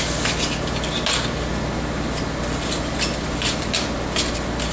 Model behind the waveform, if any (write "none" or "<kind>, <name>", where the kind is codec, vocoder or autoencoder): none